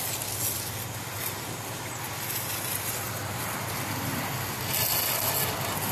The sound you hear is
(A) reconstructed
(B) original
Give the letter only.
B